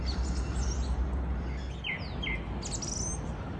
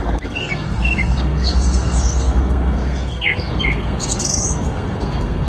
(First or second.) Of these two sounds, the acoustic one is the first